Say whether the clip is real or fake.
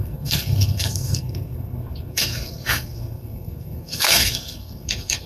fake